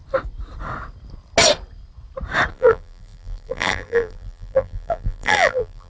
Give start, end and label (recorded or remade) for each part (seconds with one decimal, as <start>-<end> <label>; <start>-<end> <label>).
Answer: 0.0-2.5 recorded; 2.5-5.9 remade